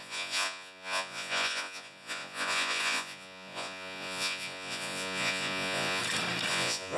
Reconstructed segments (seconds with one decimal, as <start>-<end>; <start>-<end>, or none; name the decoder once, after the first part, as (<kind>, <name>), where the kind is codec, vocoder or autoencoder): 0.0-6.0 (vocoder, Vocos); 6.5-7.0